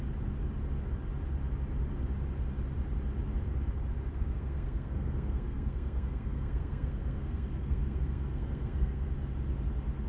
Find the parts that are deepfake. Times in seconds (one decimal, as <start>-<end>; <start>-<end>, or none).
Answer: 4.1-9.1